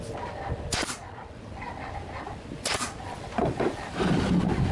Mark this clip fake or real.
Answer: real